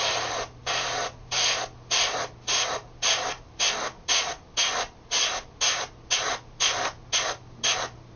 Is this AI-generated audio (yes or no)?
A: no